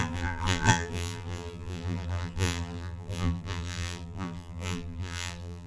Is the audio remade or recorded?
remade